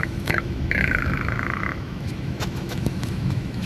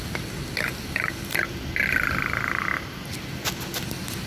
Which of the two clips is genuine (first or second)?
second